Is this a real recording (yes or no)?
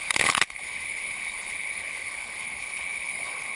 no